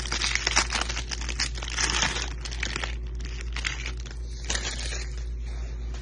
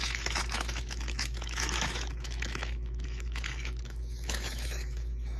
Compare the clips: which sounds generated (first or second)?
second